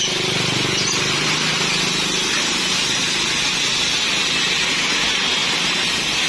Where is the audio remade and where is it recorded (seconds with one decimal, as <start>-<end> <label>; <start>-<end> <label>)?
0.0-5.4 recorded; 5.4-6.3 remade